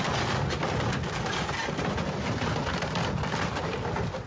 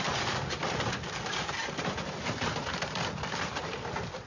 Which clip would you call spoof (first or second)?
second